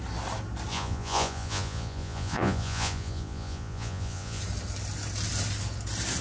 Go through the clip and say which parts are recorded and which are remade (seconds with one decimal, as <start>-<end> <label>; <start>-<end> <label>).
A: 0.0-0.7 recorded; 0.7-4.4 remade; 4.4-6.2 recorded

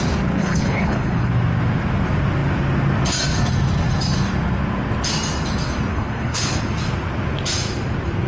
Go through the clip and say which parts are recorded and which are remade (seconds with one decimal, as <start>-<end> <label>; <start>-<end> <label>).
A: 0.0-0.4 recorded; 0.4-1.3 remade; 1.3-5.9 recorded; 5.9-6.6 remade; 6.6-8.3 recorded